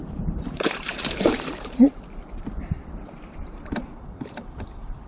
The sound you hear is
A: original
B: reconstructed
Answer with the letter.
B